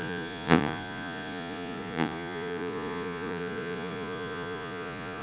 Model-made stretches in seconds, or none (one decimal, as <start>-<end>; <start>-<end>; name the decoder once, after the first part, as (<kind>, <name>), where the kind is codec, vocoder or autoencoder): 0.0-5.2 (vocoder, Vocos)